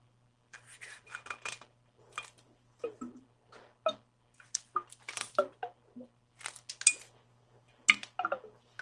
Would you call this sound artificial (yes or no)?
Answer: no